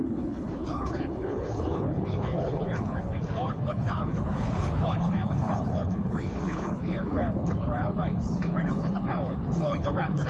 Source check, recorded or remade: remade